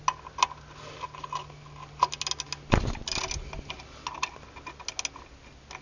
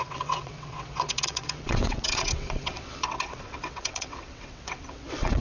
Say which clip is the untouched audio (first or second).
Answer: first